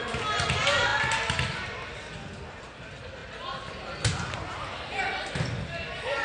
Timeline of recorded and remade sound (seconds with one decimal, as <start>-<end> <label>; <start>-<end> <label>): 0.0-6.2 recorded